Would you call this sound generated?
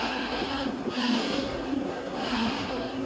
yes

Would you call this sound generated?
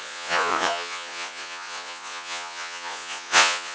yes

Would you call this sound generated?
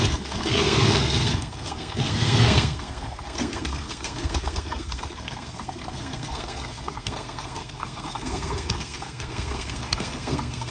yes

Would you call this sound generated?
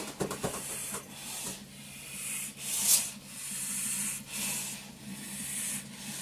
no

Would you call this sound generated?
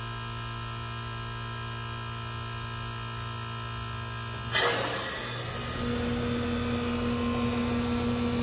no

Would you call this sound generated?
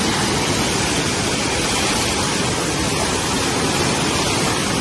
no